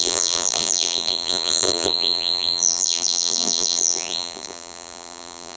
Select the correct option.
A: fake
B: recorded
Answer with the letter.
A